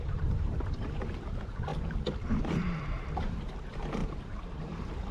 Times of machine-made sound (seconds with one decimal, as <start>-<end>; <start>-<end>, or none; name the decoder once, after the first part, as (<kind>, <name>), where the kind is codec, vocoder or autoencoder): 0.0-1.7 (vocoder, BigVGAN v2); 2.4-5.1